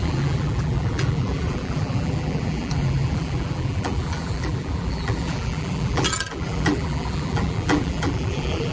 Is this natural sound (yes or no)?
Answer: no